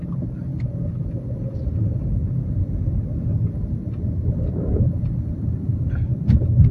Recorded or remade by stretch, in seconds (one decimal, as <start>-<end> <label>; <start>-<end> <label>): 0.0-6.7 recorded